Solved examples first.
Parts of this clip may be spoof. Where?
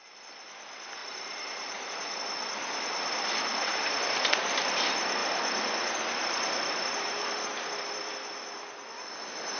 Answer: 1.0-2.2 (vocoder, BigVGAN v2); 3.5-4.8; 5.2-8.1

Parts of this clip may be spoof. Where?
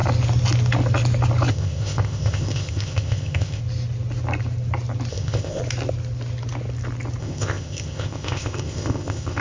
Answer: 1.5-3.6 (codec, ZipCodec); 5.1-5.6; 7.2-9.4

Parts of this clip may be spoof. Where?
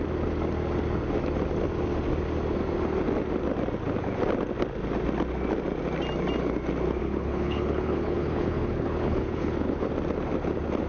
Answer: 7.0-9.9 (codec, HILCodec)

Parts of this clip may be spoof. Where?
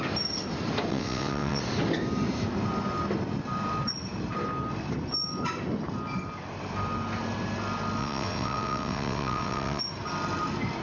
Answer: 0.9-1.6 (vocoder, WaveNeXt); 8.0-9.8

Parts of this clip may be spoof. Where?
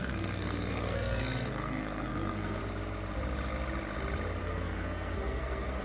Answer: 0.0-2.6 (codec, SNAC); 4.4-5.8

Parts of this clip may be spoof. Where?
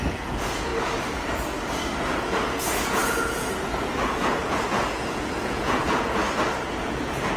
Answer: 0.0-0.7 (vocoder, Vocos); 2.0-6.2; 6.8-7.4